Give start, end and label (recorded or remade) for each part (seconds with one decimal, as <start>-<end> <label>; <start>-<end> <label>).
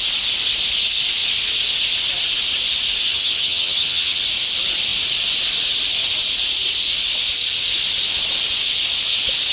0.0-3.1 recorded; 3.1-4.2 remade; 4.2-9.5 recorded